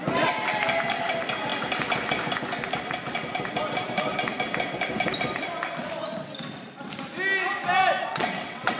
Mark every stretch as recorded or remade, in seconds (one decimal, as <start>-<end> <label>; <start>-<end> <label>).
0.0-8.1 recorded; 8.1-8.8 remade

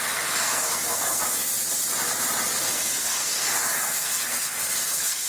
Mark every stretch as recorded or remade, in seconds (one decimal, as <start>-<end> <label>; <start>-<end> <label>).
0.0-1.2 remade; 1.2-2.6 recorded; 2.6-5.3 remade

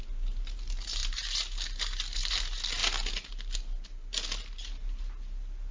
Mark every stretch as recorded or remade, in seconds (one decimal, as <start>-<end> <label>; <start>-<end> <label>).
0.0-5.7 recorded

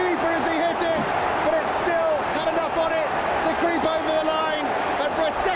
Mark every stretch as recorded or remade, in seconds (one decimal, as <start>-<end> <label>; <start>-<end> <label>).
0.0-5.6 recorded